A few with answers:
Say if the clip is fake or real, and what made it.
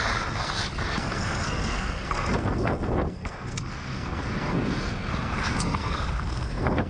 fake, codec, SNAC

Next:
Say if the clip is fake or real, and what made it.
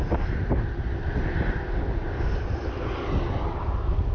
real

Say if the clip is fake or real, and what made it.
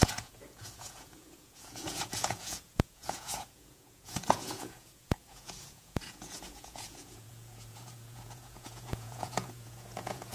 fake, vocoder, Vocos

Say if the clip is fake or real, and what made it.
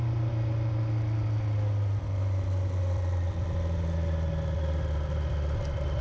real